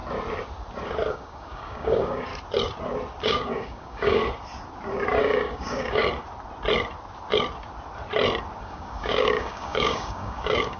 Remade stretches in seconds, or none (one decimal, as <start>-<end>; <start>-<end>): 1.1-2.3; 3.2-4.2; 5.2-6.0; 8.6-10.8